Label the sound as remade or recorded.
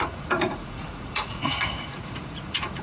remade